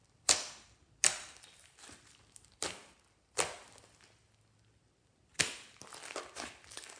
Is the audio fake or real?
real